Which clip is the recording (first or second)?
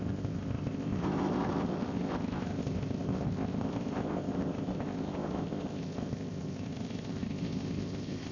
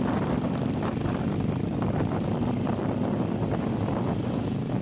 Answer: second